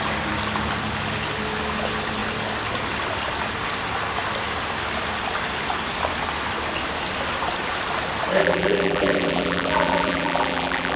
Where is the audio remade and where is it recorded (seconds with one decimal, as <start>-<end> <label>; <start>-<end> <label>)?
0.0-8.4 recorded; 8.4-11.0 remade